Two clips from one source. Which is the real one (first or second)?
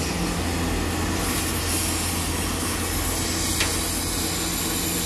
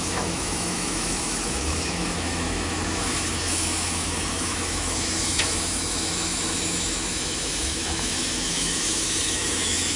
first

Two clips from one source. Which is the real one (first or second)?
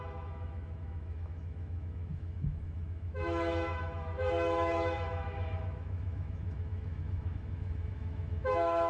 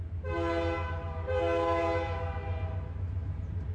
second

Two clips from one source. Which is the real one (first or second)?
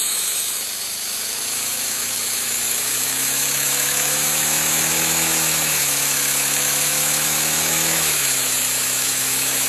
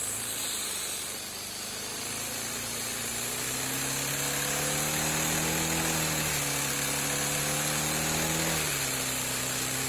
second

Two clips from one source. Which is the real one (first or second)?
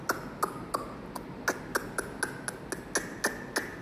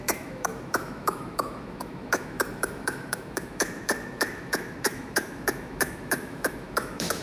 first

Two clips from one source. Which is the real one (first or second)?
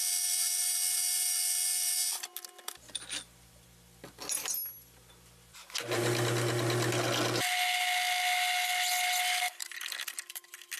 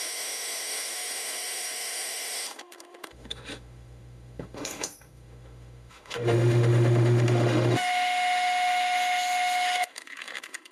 first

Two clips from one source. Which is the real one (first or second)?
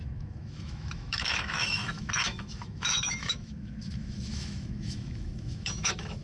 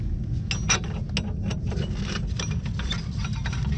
second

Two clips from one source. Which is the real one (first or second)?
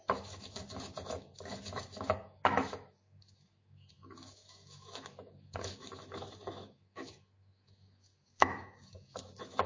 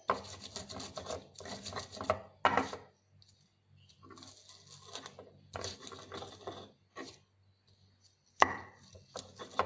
second